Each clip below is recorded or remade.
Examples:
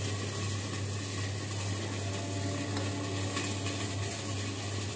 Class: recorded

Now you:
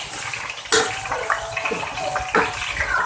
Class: recorded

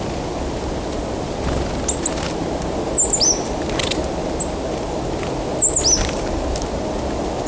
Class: recorded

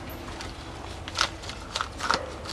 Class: recorded